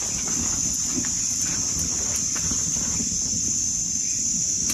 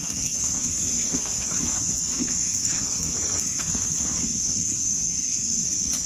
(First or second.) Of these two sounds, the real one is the first